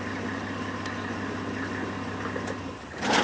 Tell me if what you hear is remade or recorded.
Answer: recorded